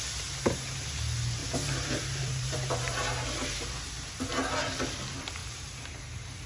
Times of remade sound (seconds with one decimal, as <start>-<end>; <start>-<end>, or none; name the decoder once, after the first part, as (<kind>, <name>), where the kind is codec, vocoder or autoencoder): 1.4-4.3 (vocoder, BigVGAN v2); 5.4-6.0